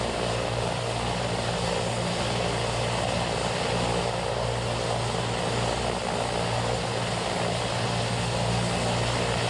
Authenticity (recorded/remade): recorded